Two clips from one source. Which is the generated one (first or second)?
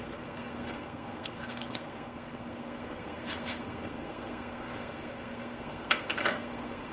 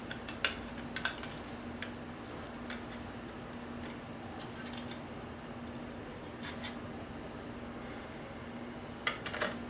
first